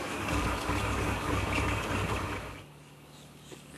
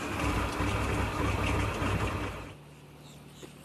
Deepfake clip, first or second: first